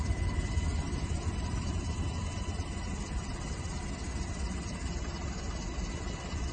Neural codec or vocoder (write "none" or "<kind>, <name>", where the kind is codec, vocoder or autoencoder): none